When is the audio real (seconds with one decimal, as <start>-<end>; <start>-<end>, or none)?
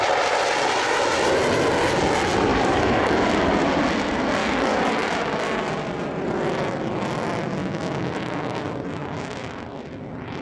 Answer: 0.0-2.5; 3.1-4.4; 5.6-7.6; 8.6-10.4